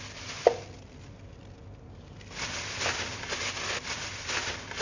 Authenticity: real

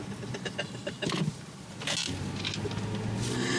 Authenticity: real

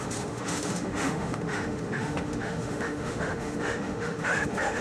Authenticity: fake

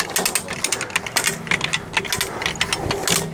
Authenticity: real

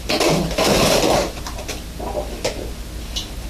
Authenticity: real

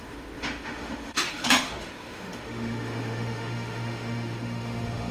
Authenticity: fake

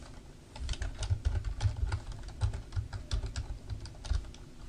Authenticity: real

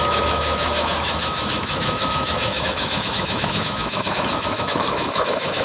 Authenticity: fake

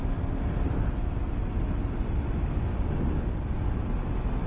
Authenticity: real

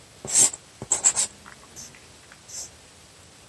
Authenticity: real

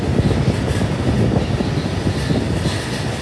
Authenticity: real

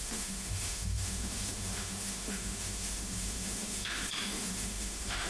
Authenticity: fake